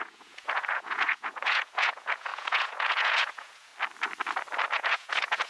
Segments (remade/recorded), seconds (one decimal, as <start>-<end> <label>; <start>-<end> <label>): 0.0-3.7 remade; 3.7-4.7 recorded; 4.7-5.5 remade